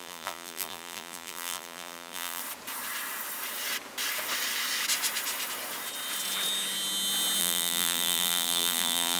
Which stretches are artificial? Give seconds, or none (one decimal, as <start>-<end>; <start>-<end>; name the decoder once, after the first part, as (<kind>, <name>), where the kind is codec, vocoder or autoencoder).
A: 0.0-2.4 (vocoder, BigVGAN v2); 7.4-9.2